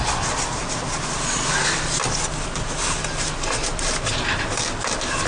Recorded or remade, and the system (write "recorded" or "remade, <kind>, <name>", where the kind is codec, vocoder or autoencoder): recorded